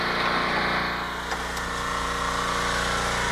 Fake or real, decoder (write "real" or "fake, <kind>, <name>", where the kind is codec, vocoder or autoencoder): real